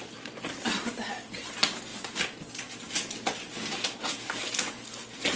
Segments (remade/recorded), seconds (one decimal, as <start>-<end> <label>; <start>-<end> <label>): 0.0-5.4 recorded